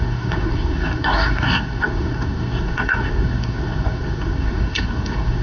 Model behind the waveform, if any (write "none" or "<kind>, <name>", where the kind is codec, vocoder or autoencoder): codec, SNAC